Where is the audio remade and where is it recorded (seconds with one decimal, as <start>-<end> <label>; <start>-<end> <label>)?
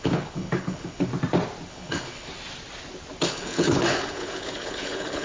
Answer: 0.0-1.1 remade; 1.1-1.7 recorded; 1.7-2.3 remade; 2.3-3.2 recorded; 3.2-5.2 remade